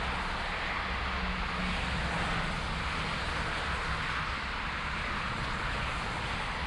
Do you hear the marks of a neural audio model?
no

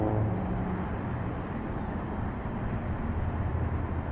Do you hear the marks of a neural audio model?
yes